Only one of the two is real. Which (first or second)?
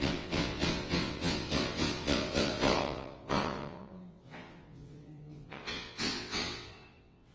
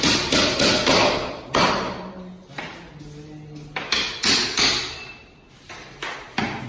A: second